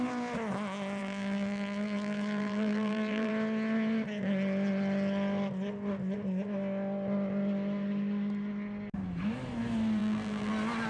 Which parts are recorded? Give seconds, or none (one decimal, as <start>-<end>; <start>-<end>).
0.0-1.0; 3.3-10.0; 10.5-10.9